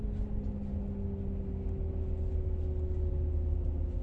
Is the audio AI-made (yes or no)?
no